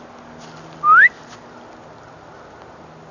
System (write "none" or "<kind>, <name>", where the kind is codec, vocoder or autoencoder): none